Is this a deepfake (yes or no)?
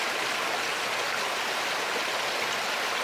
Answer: no